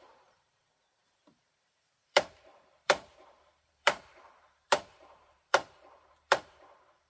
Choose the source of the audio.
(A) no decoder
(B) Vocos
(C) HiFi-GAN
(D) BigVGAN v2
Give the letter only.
D